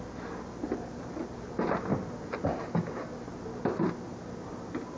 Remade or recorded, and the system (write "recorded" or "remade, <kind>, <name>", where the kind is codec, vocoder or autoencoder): recorded